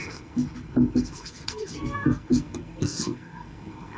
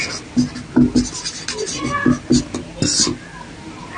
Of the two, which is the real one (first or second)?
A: second